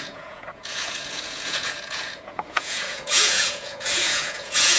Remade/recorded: remade